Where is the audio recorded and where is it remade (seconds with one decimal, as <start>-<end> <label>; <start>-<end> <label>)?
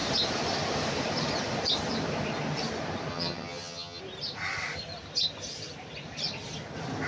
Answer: 0.0-3.1 recorded; 3.1-4.0 remade; 4.0-7.1 recorded